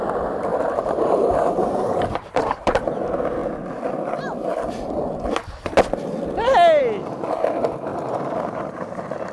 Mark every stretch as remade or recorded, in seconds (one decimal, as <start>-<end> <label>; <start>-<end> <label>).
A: 0.0-0.5 recorded; 0.5-3.0 remade; 3.0-7.9 recorded; 7.9-9.3 remade